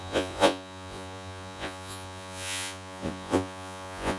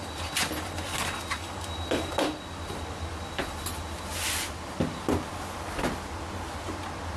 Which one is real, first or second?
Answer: second